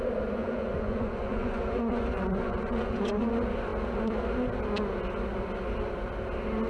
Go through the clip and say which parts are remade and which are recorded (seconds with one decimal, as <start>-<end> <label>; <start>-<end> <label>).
0.0-0.4 recorded; 0.4-3.3 remade; 3.3-6.7 recorded